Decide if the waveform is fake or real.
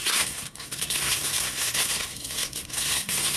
fake